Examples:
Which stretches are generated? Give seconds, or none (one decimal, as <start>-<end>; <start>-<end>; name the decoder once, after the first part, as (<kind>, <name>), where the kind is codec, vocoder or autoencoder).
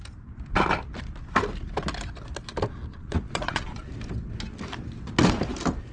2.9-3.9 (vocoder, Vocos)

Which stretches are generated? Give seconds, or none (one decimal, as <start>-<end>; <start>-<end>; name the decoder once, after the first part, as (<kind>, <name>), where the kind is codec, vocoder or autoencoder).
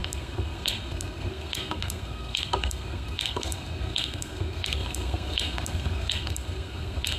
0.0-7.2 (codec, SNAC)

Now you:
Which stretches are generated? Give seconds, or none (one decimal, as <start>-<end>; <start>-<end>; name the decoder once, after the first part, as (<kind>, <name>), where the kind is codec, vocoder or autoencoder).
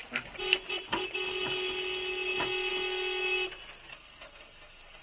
3.9-5.0 (codec, SNAC)